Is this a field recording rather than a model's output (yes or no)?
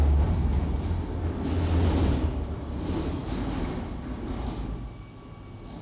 yes